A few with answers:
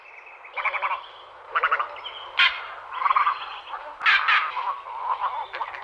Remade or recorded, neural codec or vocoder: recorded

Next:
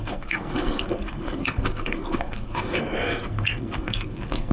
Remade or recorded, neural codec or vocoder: remade, codec, SNAC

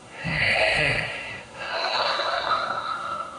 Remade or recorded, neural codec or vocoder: remade, codec, SNAC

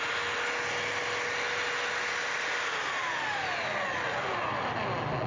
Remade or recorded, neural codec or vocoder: recorded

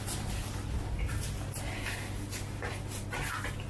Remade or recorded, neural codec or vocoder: recorded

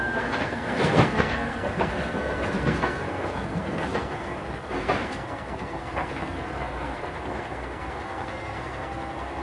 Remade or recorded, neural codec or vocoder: remade, codec, SNAC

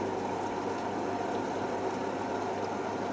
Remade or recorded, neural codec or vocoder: recorded